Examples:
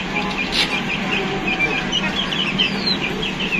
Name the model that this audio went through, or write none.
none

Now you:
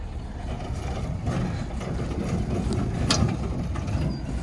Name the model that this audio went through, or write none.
none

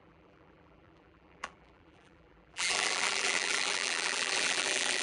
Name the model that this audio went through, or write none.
vocoder, BigVGAN v2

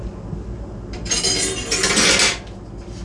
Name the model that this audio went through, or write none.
none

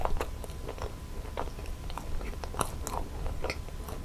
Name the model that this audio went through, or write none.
none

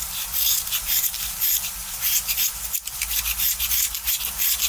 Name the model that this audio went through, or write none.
none